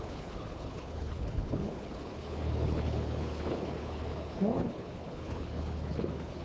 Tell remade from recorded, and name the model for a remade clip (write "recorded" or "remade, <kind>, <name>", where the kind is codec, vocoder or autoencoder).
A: remade, codec, HILCodec